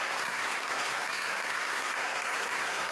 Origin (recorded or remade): remade